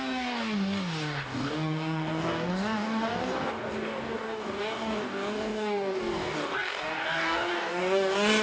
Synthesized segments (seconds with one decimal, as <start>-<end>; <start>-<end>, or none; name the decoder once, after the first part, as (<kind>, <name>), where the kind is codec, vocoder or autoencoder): 0.0-8.4 (codec, DAC)